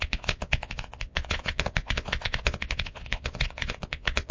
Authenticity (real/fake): fake